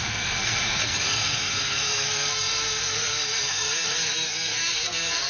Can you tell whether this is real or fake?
fake